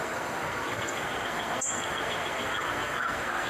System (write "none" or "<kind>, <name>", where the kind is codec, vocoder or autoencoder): codec, SNAC